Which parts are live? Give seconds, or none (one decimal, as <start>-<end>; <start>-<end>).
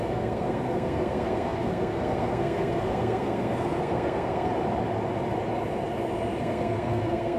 4.5-6.4